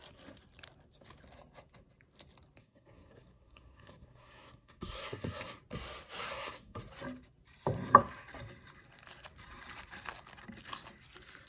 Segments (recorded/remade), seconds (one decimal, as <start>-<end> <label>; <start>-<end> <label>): 0.0-2.6 recorded; 2.6-5.6 remade; 5.6-6.3 recorded; 6.3-6.8 remade; 6.8-11.5 recorded

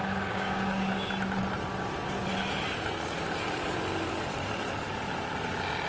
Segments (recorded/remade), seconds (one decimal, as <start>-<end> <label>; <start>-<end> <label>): 0.0-1.1 remade; 1.1-5.9 recorded